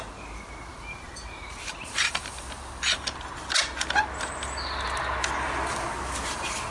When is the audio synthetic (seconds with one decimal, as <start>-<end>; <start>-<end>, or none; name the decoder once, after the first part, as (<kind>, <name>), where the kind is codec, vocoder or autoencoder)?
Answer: 0.7-2.4 (vocoder, BigVGAN v2)